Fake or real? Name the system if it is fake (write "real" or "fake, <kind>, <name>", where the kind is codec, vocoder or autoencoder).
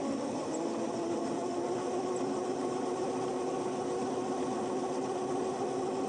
real